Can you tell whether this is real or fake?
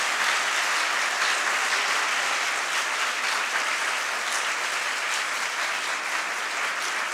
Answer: real